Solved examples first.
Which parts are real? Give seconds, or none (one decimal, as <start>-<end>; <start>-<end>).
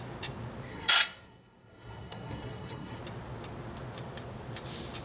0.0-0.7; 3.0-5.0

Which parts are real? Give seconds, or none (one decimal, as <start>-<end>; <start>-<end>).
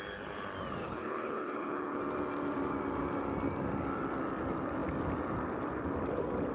0.0-0.8; 2.0-6.5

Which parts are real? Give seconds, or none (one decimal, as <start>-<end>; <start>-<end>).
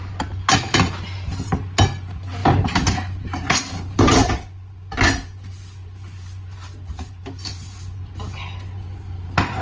0.0-2.4; 4.3-9.6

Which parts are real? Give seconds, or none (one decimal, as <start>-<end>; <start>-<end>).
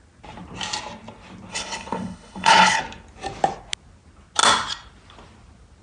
0.0-1.5; 2.8-5.8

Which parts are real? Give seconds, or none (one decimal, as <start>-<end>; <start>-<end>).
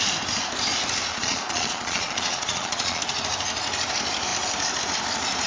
0.0-1.1; 3.0-5.5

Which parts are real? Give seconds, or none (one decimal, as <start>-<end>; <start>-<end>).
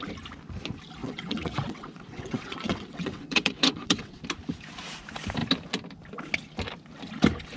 0.0-1.0; 4.2-7.6